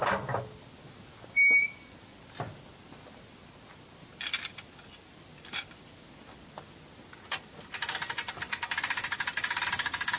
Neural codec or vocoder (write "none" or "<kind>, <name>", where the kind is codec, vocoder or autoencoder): none